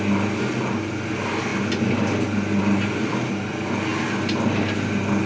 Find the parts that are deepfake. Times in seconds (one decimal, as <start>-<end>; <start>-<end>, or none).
none